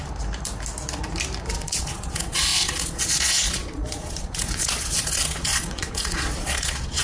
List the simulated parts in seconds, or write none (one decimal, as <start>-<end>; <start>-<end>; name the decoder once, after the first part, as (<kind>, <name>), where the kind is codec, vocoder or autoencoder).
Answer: 1.5-7.0 (vocoder, Vocos)